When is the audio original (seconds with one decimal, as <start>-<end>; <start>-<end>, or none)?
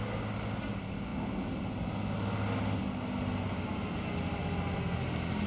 0.0-5.5